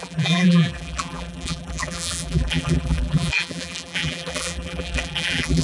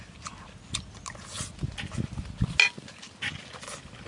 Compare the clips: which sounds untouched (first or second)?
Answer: second